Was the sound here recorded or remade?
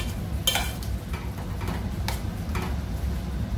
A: recorded